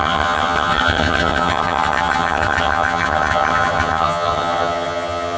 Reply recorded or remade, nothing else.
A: remade